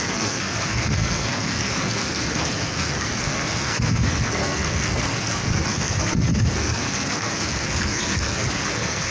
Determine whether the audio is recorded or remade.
remade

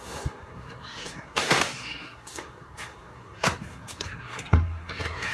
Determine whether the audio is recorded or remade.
remade